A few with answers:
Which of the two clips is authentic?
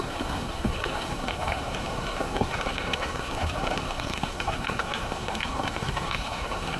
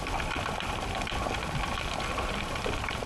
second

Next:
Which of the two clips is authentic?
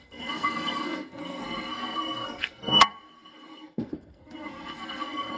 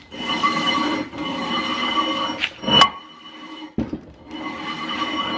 second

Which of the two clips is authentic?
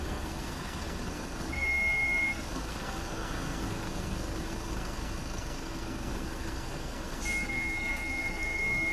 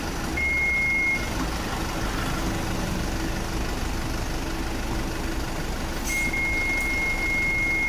second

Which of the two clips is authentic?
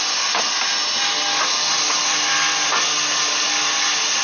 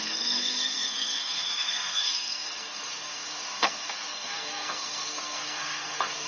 first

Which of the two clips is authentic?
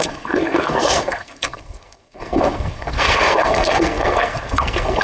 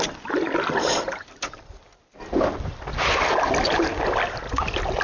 second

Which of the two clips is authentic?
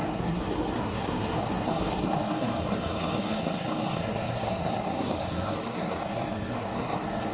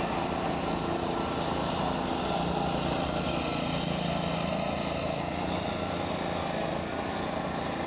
second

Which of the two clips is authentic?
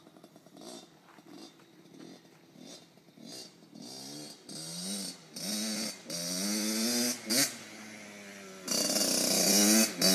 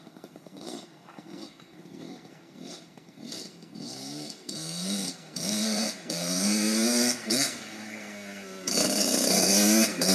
first